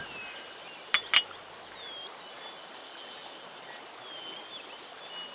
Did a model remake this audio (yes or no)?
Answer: no